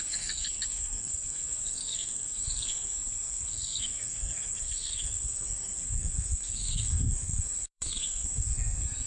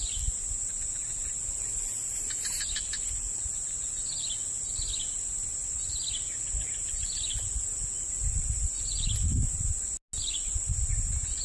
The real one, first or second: second